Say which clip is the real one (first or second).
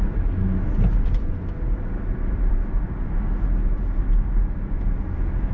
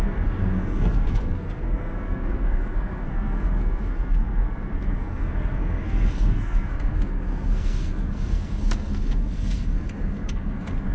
first